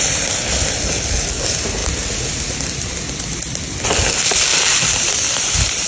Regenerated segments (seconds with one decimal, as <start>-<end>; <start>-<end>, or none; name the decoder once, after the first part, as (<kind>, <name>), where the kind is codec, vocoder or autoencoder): 4.5-5.9 (vocoder, BigVGAN v2)